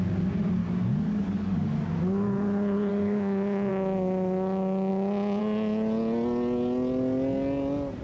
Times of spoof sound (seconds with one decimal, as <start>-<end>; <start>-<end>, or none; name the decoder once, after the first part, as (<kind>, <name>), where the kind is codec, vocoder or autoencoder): 0.6-1.9 (codec, DAC); 2.9-3.7